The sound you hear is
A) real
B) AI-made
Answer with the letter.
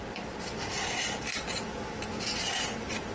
A